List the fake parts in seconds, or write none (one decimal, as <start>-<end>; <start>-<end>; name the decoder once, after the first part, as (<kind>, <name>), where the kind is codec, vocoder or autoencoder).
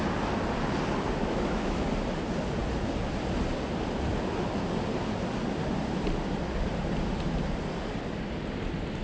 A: 1.2-1.8 (autoencoder, DAC-VAE)